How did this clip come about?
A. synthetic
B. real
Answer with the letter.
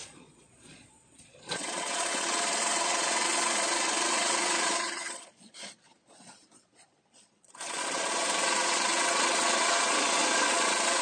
A